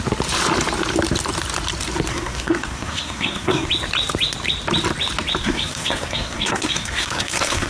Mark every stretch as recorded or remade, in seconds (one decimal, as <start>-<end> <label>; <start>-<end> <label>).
0.0-2.1 recorded; 2.1-3.7 remade; 3.7-5.4 recorded; 5.4-7.7 remade